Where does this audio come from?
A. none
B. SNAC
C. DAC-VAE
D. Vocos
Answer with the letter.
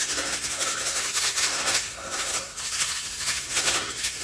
B